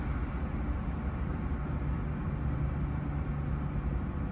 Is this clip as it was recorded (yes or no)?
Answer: yes